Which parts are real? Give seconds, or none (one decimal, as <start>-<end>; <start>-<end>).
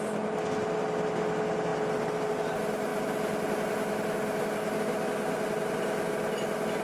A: 0.0-6.8